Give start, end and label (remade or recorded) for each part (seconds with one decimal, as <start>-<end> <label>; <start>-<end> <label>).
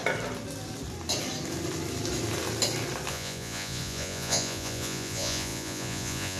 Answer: 0.0-3.1 recorded; 3.1-6.4 remade